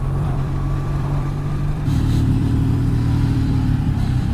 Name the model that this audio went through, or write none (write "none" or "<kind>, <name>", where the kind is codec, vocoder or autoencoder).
vocoder, BigVGAN v2